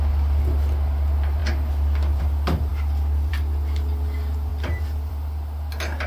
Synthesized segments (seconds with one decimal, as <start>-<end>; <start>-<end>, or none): none